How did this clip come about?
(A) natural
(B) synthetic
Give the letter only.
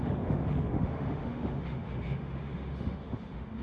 B